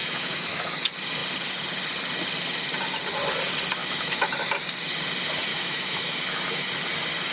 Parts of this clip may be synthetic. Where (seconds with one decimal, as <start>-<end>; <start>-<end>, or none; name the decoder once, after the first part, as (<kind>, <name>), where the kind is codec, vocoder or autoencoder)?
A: 0.0-0.7 (autoencoder, DAC-VAE); 3.8-4.3; 5.5-6.7